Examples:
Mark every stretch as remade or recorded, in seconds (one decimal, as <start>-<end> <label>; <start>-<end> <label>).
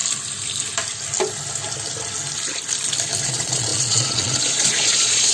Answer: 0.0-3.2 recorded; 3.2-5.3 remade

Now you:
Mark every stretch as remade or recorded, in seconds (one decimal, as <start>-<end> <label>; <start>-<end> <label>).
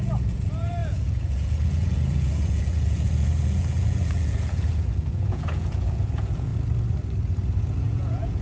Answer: 0.0-6.5 remade; 6.5-7.6 recorded; 7.6-8.4 remade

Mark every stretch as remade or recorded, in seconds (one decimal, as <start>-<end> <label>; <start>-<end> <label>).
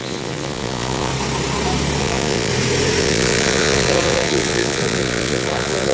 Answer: 0.0-1.1 remade; 1.1-2.0 recorded; 2.0-2.5 remade; 2.5-3.0 recorded; 3.0-5.9 remade